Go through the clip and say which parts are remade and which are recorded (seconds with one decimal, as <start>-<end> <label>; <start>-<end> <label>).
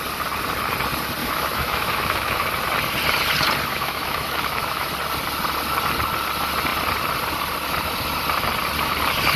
0.0-1.2 recorded; 1.2-2.5 remade; 2.5-3.7 recorded; 3.7-4.9 remade; 4.9-9.4 recorded